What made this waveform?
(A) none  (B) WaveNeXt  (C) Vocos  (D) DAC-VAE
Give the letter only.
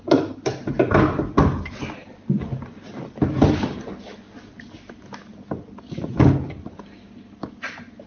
A